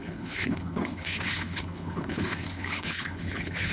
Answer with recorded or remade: remade